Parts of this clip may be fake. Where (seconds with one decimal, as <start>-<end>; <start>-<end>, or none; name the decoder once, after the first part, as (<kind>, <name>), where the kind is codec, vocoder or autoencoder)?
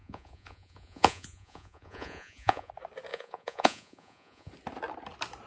0.0-2.7 (vocoder, Vocos); 3.1-4.5